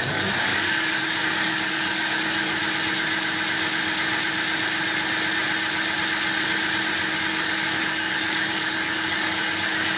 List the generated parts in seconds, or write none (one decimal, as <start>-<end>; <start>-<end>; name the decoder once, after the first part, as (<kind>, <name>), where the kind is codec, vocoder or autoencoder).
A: 0.0-2.6 (codec, DAC); 7.0-10.0